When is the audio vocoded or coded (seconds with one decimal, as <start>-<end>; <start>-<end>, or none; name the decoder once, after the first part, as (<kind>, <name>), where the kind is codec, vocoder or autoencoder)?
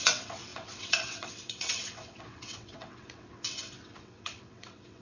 0.0-5.0 (vocoder, WaveNeXt)